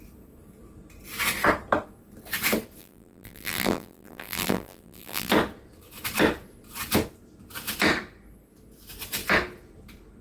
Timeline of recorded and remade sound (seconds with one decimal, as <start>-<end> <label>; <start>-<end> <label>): 0.0-2.8 recorded; 2.8-5.3 remade; 5.3-10.2 recorded